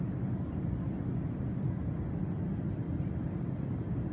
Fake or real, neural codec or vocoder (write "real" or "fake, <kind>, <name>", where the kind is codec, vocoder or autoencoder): real